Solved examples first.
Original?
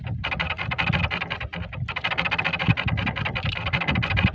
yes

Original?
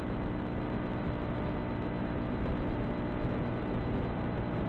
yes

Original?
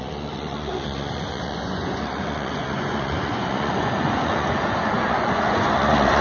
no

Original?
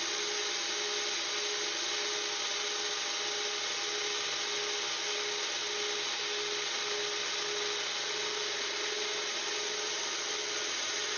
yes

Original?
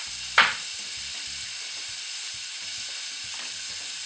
yes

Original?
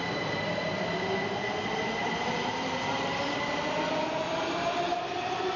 yes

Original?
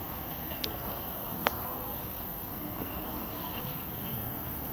no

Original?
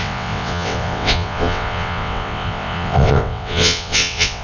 no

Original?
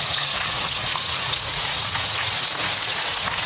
no